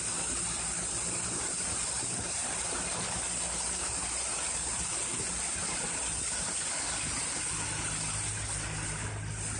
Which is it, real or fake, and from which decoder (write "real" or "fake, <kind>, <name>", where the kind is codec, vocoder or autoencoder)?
real